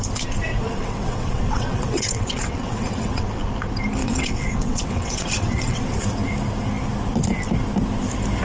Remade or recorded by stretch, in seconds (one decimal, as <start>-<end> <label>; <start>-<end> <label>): 0.0-0.8 recorded; 0.8-3.3 remade; 3.3-4.0 recorded; 4.0-6.1 remade; 6.1-8.4 recorded